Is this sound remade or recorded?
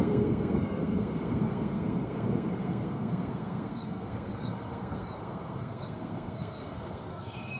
remade